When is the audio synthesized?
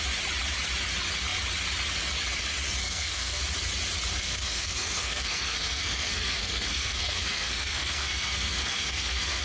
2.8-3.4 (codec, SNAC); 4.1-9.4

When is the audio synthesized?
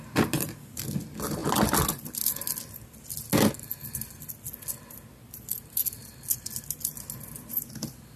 none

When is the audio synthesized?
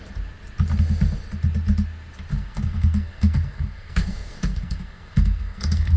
2.3-6.0 (codec, SNAC)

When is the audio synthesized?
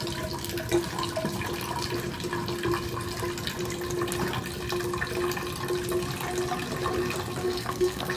7.4-8.2 (codec, SNAC)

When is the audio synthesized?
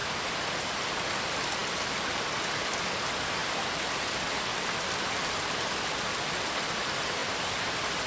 none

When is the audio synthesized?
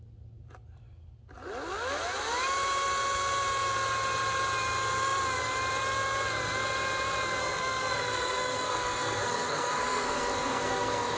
7.4-11.2 (codec, SNAC)